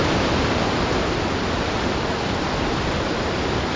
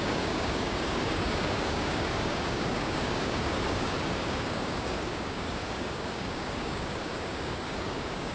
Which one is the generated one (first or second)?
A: second